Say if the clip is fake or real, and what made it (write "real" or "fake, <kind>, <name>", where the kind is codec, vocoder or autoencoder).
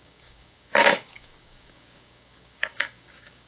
fake, codec, DAC